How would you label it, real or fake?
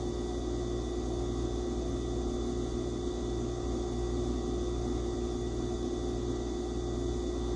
real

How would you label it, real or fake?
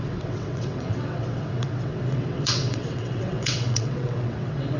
fake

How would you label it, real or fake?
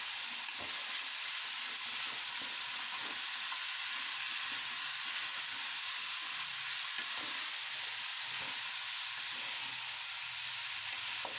real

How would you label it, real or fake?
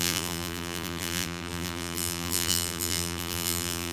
fake